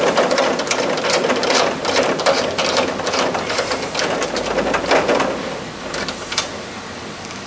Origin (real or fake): real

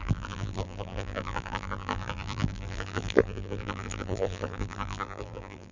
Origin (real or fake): fake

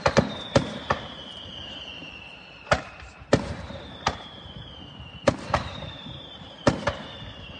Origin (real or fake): fake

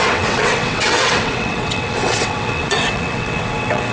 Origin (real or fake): fake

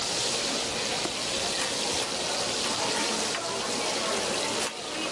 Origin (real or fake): real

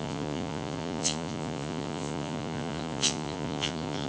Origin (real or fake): fake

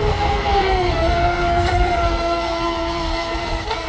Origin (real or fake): fake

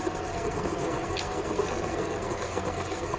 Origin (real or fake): fake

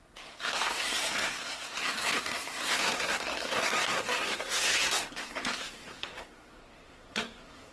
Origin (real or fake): fake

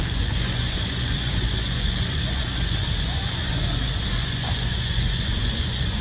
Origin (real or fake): fake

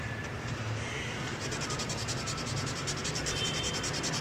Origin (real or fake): fake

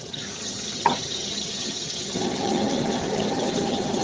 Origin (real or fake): fake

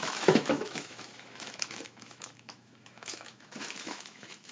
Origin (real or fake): fake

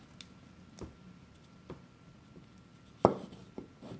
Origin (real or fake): real